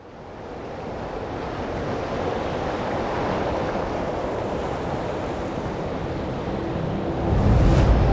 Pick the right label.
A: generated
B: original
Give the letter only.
B